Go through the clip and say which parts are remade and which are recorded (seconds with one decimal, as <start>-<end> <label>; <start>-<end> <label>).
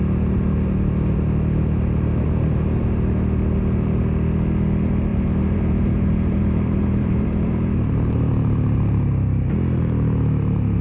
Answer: 0.0-5.1 recorded; 5.1-9.0 remade; 9.0-10.8 recorded